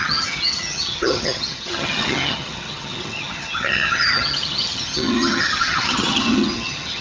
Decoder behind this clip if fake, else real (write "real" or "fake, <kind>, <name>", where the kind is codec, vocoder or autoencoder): fake, vocoder, HiFi-GAN